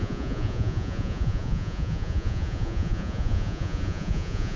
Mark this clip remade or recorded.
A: remade